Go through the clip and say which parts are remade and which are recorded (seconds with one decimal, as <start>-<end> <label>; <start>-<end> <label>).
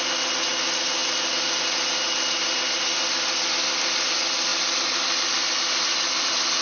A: 0.0-6.6 recorded